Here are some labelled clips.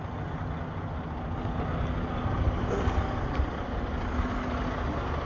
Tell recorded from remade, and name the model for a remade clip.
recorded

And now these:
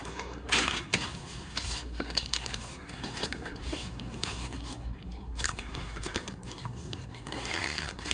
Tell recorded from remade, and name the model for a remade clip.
remade, codec, SNAC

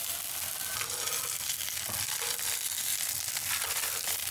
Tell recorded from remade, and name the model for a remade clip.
recorded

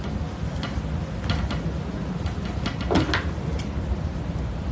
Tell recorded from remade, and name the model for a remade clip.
recorded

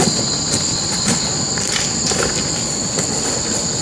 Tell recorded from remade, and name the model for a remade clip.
recorded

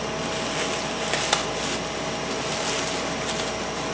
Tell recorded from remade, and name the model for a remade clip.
recorded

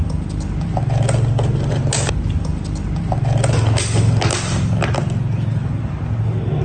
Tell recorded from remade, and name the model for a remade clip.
recorded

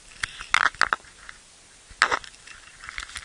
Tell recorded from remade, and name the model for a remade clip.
recorded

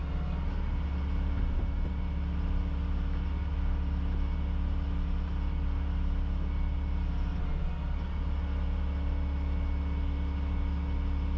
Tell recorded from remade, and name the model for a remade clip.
recorded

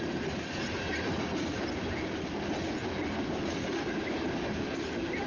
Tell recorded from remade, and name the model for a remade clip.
recorded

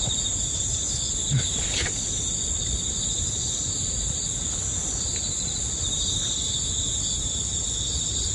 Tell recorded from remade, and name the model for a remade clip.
recorded